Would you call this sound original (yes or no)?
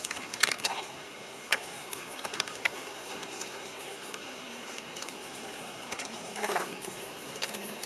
no